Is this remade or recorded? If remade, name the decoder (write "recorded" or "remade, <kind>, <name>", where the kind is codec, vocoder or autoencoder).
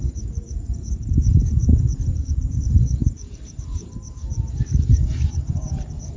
remade, vocoder, BigVGAN v2